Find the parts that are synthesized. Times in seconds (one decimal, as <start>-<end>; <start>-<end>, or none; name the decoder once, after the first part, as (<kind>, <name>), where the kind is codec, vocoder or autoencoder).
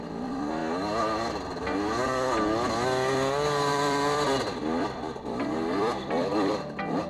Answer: 3.7-6.5 (vocoder, BigVGAN v2)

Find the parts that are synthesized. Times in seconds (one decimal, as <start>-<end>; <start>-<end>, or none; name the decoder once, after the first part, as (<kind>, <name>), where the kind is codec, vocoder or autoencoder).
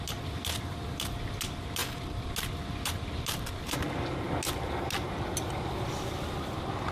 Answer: 1.8-2.3 (vocoder, BigVGAN v2)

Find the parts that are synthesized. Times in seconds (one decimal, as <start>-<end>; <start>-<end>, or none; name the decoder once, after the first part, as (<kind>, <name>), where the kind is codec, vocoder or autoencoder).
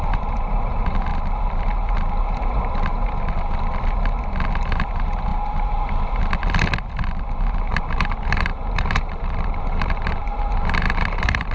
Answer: 0.0-1.1 (vocoder, BigVGAN v2); 2.2-3.0; 4.5-5.3; 7.5-11.5